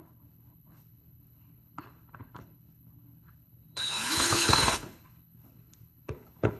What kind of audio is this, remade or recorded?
remade